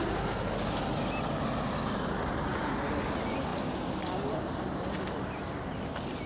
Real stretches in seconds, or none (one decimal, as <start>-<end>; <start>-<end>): 0.0-6.3